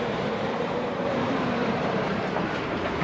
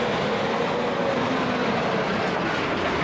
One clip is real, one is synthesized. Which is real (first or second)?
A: second